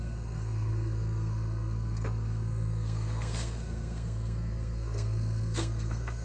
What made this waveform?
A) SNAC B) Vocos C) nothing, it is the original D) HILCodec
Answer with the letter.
A